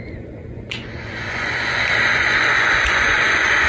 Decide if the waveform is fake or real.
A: fake